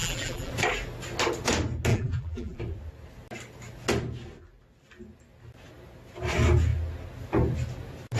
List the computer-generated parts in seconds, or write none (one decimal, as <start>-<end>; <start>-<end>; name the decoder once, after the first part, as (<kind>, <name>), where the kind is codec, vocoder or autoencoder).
0.0-0.5 (vocoder, BigVGAN v2); 1.9-2.6